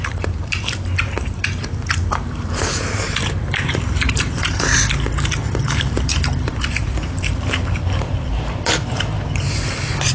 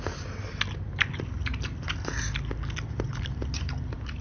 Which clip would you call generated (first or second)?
first